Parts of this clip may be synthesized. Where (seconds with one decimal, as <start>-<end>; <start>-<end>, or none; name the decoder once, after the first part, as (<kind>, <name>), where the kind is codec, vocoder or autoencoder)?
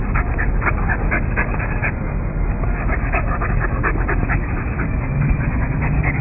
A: none